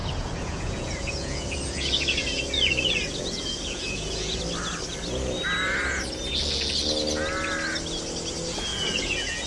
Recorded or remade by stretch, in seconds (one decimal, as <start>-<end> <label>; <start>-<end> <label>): 0.0-4.4 remade; 4.4-8.7 recorded; 8.7-9.5 remade